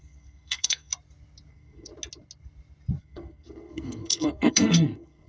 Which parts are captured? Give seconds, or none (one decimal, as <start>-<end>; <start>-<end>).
0.9-1.5; 1.9-3.0

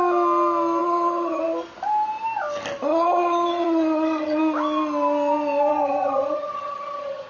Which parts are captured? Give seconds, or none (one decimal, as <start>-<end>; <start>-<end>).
0.0-0.8; 1.4-2.9; 4.4-5.7

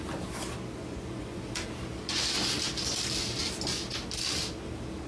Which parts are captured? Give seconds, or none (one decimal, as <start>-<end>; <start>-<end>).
0.0-0.8; 1.4-5.1

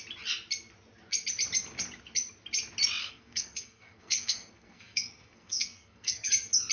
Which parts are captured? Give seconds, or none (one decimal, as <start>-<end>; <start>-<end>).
0.0-3.0; 6.3-6.7